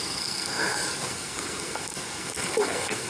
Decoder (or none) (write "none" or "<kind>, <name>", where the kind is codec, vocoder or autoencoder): codec, SNAC